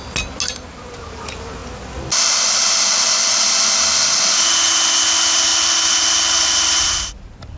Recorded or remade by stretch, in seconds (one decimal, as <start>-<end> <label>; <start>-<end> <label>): 0.0-7.6 recorded